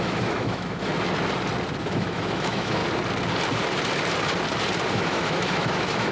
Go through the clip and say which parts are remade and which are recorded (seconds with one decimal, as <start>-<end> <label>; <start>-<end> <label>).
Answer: 0.0-0.9 remade; 0.9-1.8 recorded; 1.8-2.8 remade; 2.8-4.9 recorded; 4.9-6.1 remade